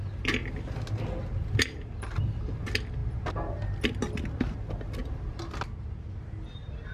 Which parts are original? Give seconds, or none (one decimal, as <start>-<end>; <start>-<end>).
0.0-6.9